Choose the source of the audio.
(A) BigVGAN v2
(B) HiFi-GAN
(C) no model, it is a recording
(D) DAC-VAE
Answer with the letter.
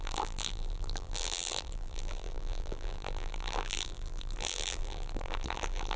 A